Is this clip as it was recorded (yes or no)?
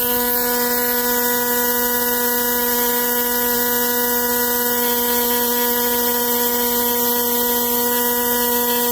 yes